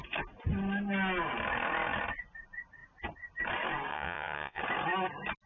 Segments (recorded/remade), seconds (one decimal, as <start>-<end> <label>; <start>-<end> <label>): 0.0-3.9 recorded; 3.9-4.6 remade; 4.6-5.5 recorded